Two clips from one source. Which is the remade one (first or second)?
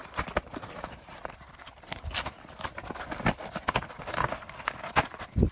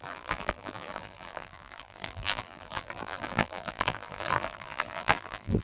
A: second